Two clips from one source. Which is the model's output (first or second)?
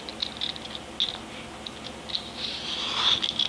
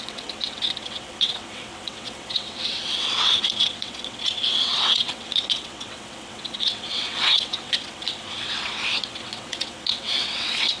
second